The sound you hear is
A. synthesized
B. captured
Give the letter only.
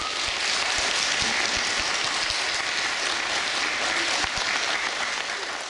B